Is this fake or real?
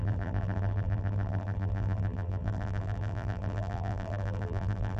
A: fake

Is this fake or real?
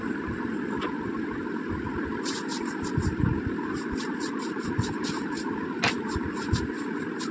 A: fake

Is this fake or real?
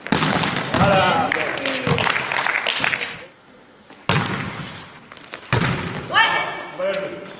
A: real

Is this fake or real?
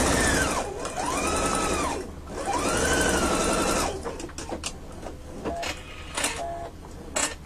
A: real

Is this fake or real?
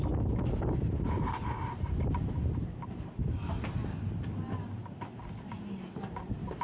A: real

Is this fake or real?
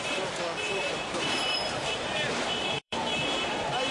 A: fake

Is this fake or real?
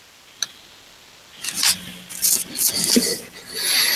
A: real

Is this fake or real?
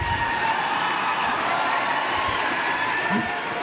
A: fake